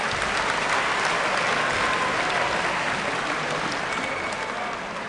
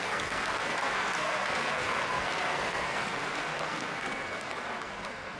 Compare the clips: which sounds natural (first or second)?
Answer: first